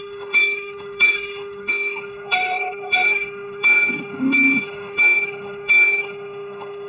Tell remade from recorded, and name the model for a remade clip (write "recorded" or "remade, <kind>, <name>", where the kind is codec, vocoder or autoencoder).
remade, autoencoder, DAC-VAE